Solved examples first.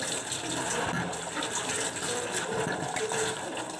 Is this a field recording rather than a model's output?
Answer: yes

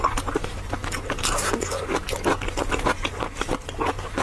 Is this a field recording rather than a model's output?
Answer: yes